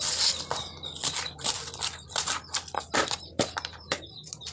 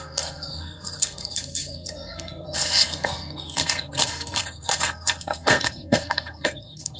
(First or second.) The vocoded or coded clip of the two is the second